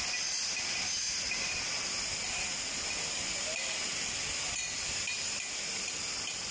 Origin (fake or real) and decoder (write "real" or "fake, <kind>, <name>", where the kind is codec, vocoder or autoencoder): real